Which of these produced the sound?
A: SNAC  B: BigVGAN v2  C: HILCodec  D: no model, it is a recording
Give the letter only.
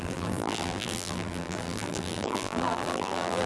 B